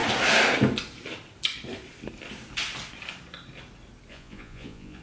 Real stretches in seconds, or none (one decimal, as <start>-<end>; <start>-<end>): 0.0-4.1